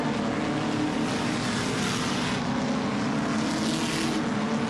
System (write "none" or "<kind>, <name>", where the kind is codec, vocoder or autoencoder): none